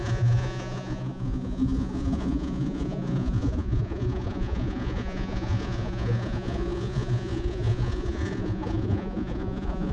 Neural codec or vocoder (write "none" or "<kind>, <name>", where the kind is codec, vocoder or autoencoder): vocoder, Vocos